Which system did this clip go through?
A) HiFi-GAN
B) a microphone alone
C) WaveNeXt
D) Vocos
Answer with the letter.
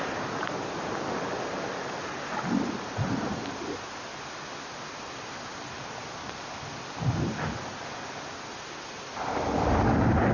B